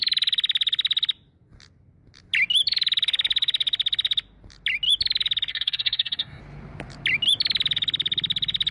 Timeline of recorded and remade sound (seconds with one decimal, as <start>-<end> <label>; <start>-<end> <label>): 0.0-5.5 recorded; 5.5-6.4 remade; 6.4-8.7 recorded